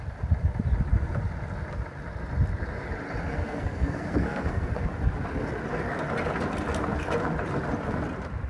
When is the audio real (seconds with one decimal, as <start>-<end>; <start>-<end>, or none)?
0.0-3.3; 4.7-8.5